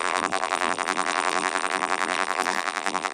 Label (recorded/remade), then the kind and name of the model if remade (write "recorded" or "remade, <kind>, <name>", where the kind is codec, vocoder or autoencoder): remade, vocoder, BigVGAN v2